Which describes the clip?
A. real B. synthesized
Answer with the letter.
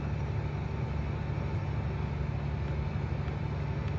A